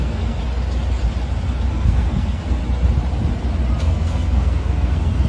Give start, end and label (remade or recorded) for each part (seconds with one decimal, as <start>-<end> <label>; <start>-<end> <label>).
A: 0.0-0.4 remade; 0.4-1.7 recorded; 1.7-2.6 remade; 2.6-3.8 recorded; 3.8-5.3 remade